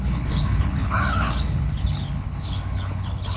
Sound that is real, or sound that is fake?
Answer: fake